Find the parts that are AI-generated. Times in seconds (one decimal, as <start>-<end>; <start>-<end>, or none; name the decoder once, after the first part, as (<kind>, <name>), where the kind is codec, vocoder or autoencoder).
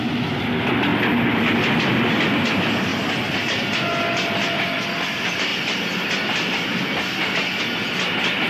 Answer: none